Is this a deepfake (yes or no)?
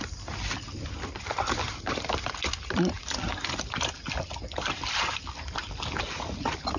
no